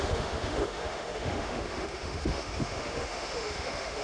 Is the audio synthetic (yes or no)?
yes